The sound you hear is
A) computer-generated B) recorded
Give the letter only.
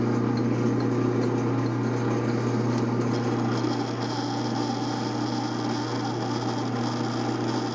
B